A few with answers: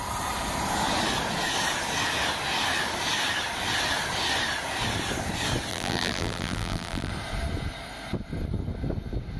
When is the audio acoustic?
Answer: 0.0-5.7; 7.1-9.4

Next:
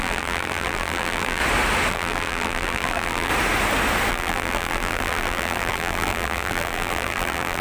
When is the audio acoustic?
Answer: 1.4-1.9; 3.3-4.1

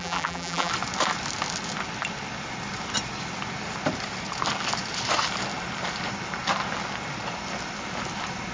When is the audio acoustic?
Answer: 0.7-8.5

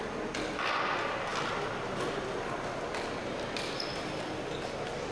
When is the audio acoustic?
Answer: 0.0-5.1

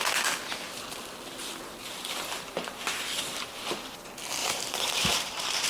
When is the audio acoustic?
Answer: 0.0-1.4; 3.6-4.4

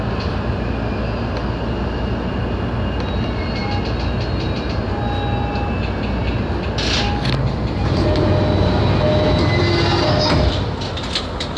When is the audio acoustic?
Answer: 0.0-11.6

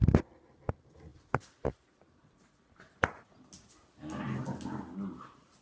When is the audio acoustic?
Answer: 0.0-5.6

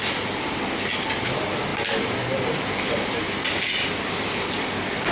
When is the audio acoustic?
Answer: 0.0-5.1